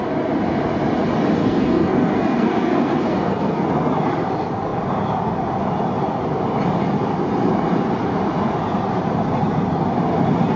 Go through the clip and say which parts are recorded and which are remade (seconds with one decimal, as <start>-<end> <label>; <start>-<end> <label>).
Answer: 0.0-1.4 recorded; 1.4-3.7 remade; 3.7-10.6 recorded